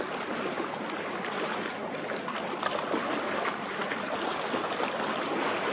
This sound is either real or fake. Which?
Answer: real